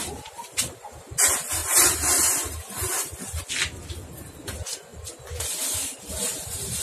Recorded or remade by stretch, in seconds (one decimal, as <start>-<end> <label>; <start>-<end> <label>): 0.0-1.6 recorded; 1.6-3.4 remade; 3.4-4.9 recorded; 4.9-6.8 remade